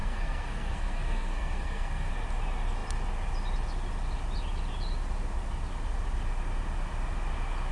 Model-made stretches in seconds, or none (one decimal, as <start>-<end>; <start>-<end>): 0.0-2.1

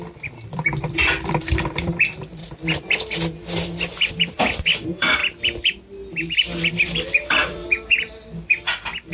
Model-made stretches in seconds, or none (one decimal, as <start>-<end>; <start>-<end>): 0.0-2.4; 4.1-5.2; 6.7-9.1

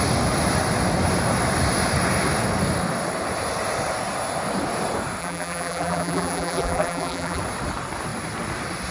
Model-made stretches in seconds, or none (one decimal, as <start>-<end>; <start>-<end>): 5.2-7.4

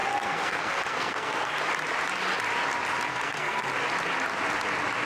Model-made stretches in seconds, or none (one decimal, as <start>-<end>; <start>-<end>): 0.0-1.5; 3.1-3.7

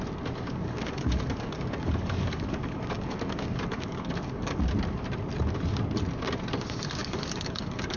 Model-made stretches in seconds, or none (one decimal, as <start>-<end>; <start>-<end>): 0.5-4.6; 7.0-8.0